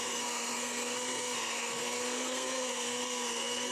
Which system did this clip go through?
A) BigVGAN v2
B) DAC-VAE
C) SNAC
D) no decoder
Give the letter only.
C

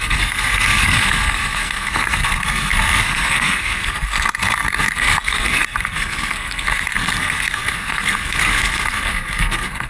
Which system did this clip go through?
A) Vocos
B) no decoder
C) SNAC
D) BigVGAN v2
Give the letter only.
C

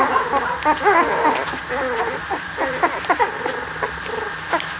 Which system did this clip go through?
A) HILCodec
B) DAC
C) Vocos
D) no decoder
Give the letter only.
D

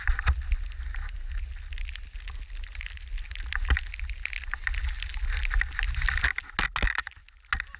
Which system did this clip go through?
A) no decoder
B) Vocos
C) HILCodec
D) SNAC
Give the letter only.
A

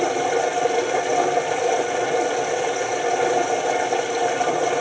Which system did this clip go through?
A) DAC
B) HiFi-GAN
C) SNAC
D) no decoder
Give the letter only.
D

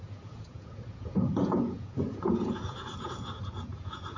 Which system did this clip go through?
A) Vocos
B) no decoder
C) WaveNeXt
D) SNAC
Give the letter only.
A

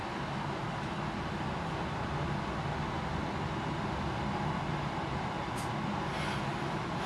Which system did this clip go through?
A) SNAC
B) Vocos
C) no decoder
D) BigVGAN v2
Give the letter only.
C